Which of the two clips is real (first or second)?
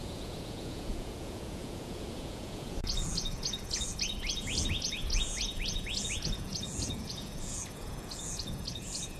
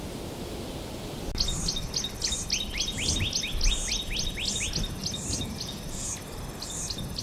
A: second